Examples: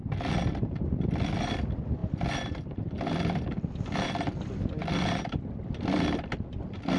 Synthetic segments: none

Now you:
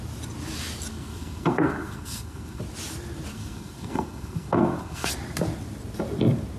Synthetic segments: 0.9-2.6 (codec, SNAC); 3.3-5.1

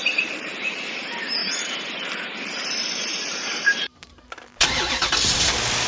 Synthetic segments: 0.0-5.9 (vocoder, BigVGAN v2)

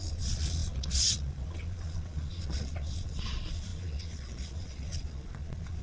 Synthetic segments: 0.0-5.8 (vocoder, Vocos)

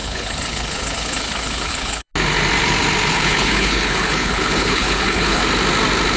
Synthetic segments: 0.0-2.1 (codec, HILCodec); 3.1-5.4

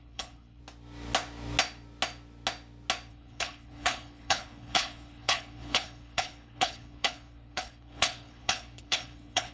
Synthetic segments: 0.0-0.6 (codec, HILCodec); 3.1-9.5